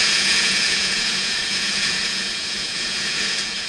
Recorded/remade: remade